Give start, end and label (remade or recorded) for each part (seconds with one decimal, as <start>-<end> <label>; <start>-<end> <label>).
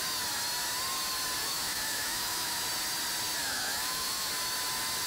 0.0-1.4 recorded; 1.4-2.6 remade; 2.6-3.4 recorded; 3.4-4.3 remade; 4.3-5.1 recorded